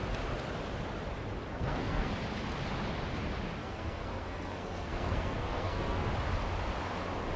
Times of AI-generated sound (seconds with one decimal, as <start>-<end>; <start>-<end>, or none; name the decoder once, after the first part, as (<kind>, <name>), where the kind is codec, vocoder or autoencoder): 1.5-2.1 (codec, SNAC); 3.6-6.1